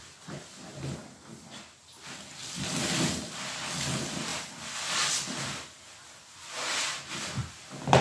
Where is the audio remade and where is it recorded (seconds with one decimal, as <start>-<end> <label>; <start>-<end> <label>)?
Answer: 0.0-2.4 recorded; 2.4-2.9 remade; 2.9-4.3 recorded; 4.3-5.1 remade; 5.1-8.0 recorded